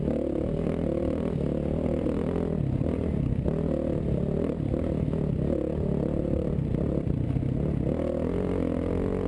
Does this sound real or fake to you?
real